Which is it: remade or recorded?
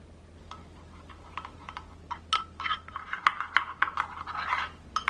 recorded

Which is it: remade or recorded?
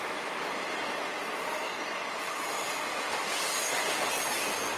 recorded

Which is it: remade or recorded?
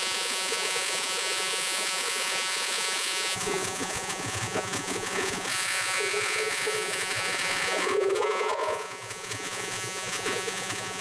remade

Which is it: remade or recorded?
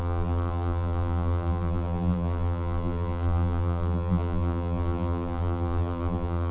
remade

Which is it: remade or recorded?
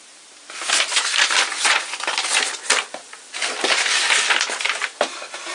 recorded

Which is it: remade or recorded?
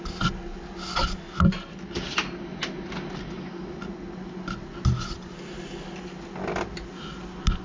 recorded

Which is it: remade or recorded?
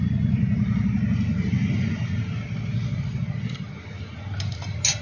recorded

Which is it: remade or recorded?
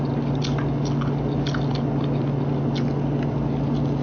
recorded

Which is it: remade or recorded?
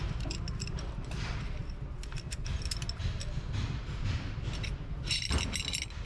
recorded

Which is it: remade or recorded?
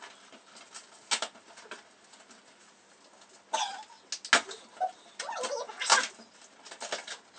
recorded